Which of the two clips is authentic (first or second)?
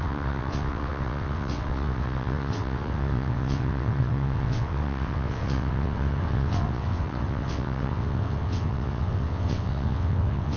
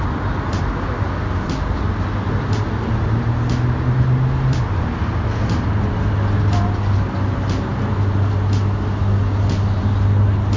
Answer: second